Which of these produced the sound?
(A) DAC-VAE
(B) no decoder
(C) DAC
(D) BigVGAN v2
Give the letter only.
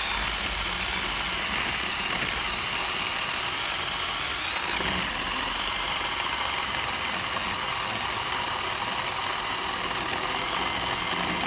B